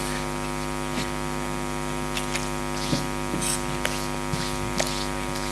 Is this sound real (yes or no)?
yes